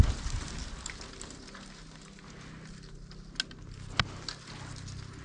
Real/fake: real